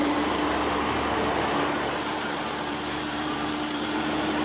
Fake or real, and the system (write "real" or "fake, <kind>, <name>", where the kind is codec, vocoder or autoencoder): fake, vocoder, BigVGAN v2